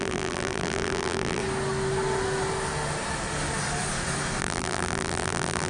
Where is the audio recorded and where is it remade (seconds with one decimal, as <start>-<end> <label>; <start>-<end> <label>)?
0.0-1.4 remade; 1.4-4.4 recorded; 4.4-5.7 remade